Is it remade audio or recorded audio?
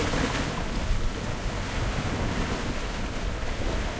recorded